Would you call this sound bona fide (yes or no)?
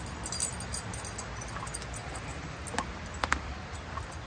yes